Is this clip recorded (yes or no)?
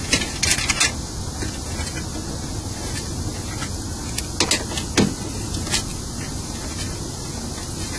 yes